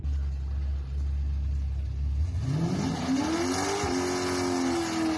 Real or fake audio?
real